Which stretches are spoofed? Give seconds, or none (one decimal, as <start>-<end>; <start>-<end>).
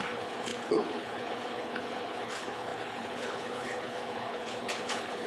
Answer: 0.0-5.3